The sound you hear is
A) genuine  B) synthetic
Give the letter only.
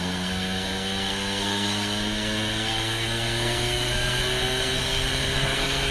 B